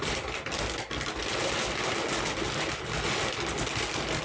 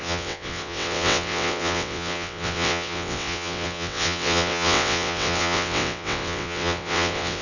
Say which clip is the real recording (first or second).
first